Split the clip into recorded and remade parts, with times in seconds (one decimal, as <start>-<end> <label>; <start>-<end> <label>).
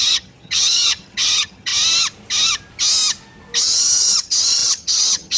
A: 0.0-1.7 remade; 1.7-3.6 recorded; 3.6-5.4 remade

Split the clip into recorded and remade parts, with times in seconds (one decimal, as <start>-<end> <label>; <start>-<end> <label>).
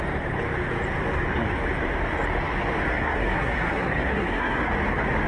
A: 0.0-2.9 recorded; 2.9-4.7 remade; 4.7-5.3 recorded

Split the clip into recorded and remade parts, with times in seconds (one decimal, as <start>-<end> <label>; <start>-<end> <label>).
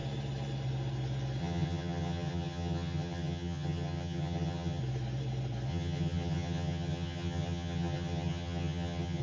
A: 0.0-1.4 recorded; 1.4-4.8 remade; 4.8-5.7 recorded; 5.7-9.2 remade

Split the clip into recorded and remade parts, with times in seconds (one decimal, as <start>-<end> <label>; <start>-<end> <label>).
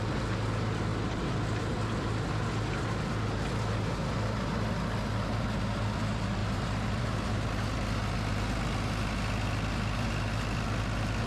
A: 0.0-6.4 recorded; 6.4-7.0 remade; 7.0-11.3 recorded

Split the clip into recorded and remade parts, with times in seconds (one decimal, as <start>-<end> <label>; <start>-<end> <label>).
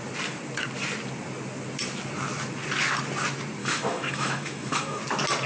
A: 0.0-3.6 recorded; 3.6-5.0 remade; 5.0-5.5 recorded